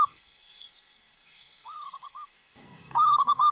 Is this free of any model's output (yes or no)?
no